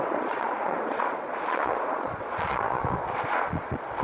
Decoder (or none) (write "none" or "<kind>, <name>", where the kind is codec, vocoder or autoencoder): vocoder, Vocos